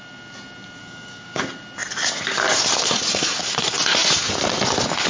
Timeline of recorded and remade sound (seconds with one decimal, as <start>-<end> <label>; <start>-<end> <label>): 0.0-0.8 recorded; 0.8-1.4 remade; 1.4-5.1 recorded